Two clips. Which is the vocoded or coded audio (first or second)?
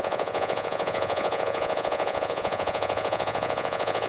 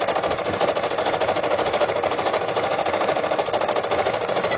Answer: first